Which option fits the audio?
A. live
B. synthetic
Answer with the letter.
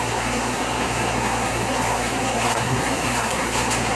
B